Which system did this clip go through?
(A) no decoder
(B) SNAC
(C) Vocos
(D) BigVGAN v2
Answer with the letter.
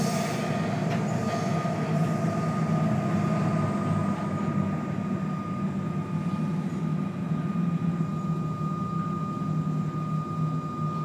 A